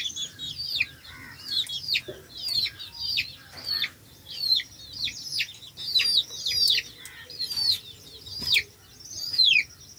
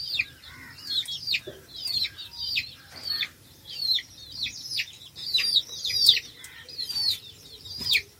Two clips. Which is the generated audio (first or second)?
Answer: second